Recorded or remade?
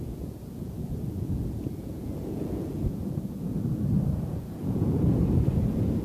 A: remade